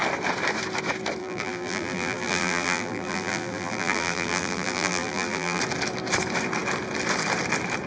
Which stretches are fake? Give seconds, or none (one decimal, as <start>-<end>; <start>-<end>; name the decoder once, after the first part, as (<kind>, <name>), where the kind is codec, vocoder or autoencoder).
1.2-5.6 (vocoder, BigVGAN v2)